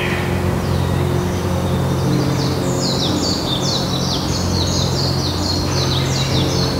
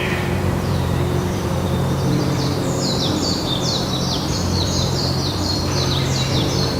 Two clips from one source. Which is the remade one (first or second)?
second